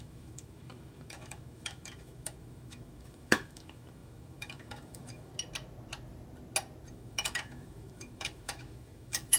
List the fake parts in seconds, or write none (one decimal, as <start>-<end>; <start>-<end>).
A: 0.0-5.3; 6.9-9.4